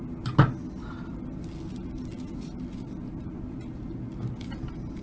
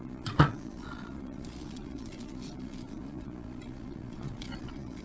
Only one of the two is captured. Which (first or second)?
first